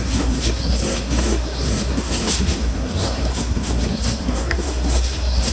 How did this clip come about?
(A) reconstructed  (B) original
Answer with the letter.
A